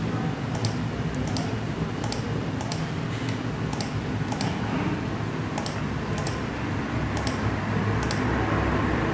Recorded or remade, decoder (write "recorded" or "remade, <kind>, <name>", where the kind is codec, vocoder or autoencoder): recorded